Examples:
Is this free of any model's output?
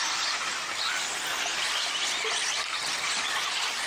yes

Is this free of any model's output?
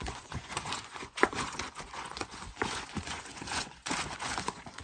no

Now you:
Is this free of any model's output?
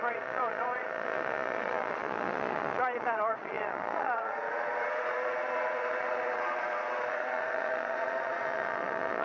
no